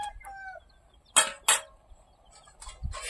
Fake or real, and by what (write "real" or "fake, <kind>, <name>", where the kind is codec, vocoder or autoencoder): real